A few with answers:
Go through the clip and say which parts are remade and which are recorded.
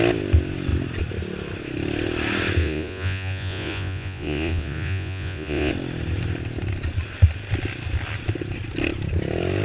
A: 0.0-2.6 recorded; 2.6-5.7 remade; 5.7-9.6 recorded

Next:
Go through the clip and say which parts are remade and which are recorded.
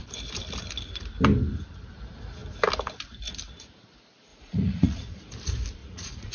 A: 0.0-4.3 recorded; 4.3-5.3 remade; 5.3-5.8 recorded; 5.8-6.3 remade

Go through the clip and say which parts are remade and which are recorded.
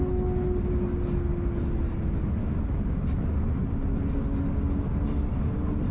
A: 0.0-5.9 recorded